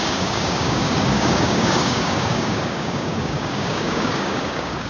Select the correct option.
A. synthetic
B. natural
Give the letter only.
A